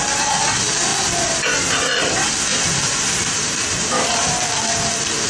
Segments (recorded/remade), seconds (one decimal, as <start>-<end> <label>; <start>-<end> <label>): 0.0-2.5 recorded; 2.5-4.3 remade; 4.3-5.3 recorded